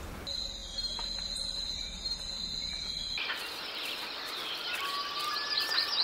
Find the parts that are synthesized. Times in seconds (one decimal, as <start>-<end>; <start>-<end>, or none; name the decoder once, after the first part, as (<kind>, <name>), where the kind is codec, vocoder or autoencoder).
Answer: none